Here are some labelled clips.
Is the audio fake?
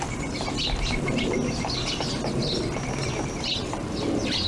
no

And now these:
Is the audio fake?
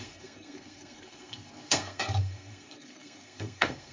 yes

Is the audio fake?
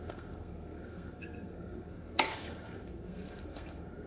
yes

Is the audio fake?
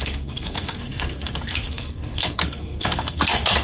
yes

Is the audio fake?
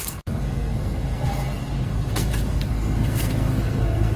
yes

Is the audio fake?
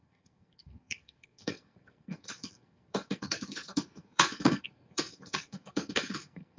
yes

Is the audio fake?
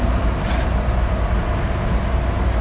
no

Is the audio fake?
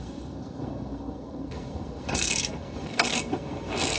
yes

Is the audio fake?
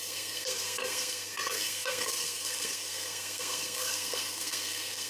yes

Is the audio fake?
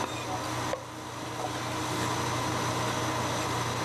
no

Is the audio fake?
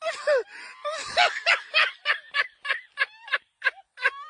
no